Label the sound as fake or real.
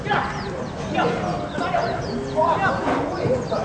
real